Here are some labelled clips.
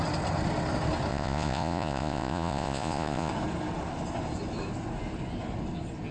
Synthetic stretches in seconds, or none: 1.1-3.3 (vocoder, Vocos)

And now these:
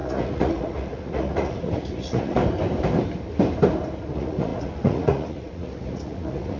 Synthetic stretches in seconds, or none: 0.0-2.4 (vocoder, Vocos); 4.1-6.6

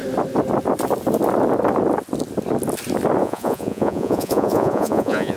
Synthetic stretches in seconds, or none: 3.2-5.4 (vocoder, Vocos)

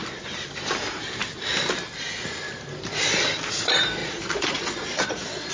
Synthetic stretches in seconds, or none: 4.0-5.5 (vocoder, Vocos)

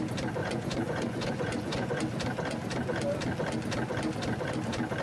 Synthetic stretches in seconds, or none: 0.4-2.0 (vocoder, Vocos)